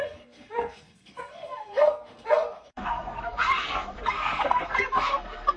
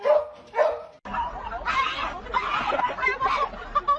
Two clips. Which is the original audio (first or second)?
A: second